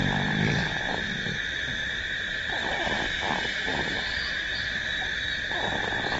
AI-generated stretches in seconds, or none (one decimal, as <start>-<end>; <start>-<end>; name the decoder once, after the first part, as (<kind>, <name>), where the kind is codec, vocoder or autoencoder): 0.0-0.9 (vocoder, BigVGAN v2); 1.8-2.3; 2.7-3.7